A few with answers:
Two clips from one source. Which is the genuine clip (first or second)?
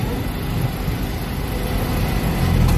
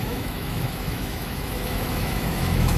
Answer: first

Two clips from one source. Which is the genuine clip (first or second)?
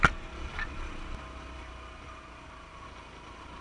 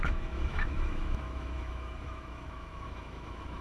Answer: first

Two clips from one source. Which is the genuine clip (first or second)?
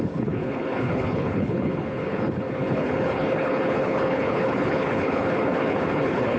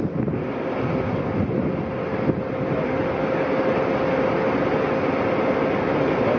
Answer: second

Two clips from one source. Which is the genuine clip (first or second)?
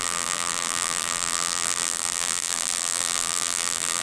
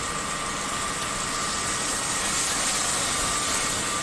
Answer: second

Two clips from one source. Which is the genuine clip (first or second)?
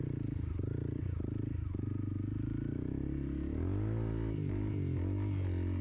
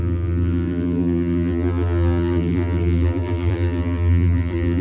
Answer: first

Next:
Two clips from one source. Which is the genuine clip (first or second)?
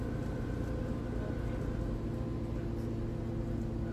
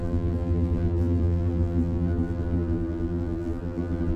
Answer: first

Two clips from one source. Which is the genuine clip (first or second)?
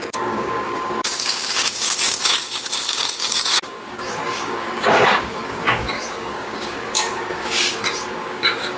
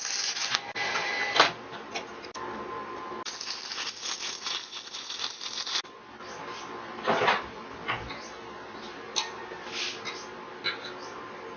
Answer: second